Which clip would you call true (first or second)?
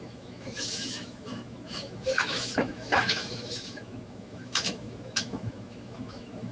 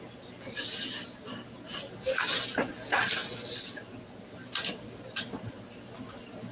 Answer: second